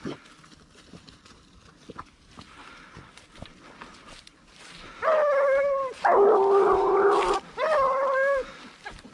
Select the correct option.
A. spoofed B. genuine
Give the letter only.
B